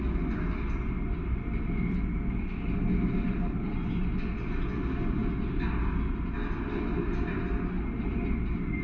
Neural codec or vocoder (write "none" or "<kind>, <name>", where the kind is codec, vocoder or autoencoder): none